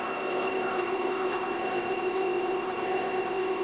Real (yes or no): no